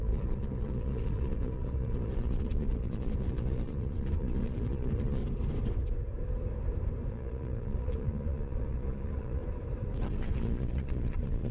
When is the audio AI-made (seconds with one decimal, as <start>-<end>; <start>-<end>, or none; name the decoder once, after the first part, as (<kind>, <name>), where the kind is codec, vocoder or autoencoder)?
0.0-5.2 (vocoder, Vocos); 7.1-9.4; 10.0-11.5